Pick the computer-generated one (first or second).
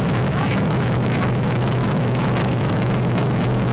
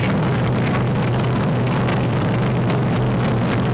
first